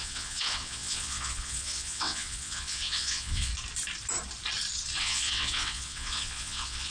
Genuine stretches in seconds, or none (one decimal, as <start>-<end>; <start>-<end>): 3.5-5.0